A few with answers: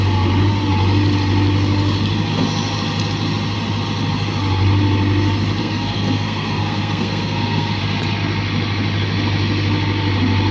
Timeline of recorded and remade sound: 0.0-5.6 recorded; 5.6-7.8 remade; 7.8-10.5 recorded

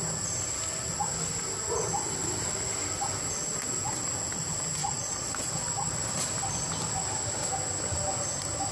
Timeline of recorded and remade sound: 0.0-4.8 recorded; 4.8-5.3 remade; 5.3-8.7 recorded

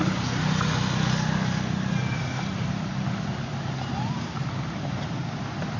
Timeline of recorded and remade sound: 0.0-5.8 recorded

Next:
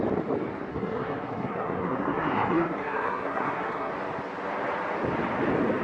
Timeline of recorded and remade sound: 0.0-0.7 recorded; 0.7-3.9 remade; 3.9-5.8 recorded